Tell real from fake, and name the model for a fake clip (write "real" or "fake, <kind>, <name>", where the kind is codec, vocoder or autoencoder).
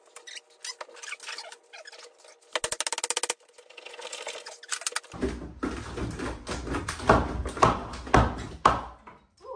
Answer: real